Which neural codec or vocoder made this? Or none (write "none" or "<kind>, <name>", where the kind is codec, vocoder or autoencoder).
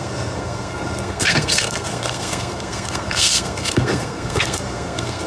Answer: codec, SNAC